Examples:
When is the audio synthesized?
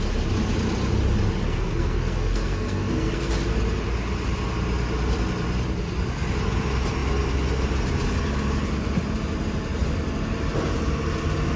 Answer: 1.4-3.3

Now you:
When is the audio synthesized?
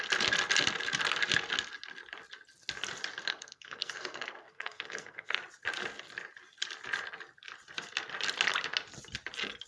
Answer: 3.3-5.4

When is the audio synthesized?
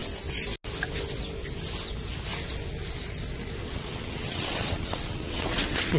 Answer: 3.6-6.0